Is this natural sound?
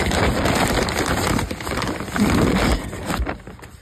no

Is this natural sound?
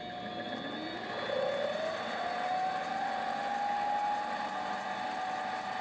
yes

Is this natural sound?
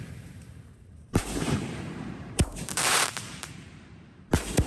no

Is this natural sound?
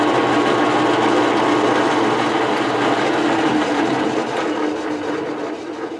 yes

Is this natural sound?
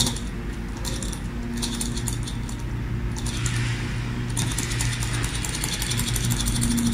yes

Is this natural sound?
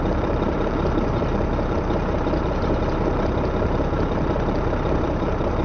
no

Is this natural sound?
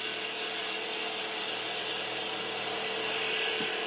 yes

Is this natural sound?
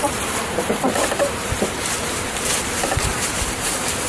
no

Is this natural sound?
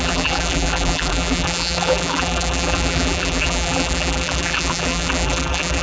no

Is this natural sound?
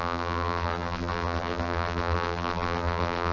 no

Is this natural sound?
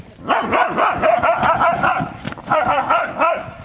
no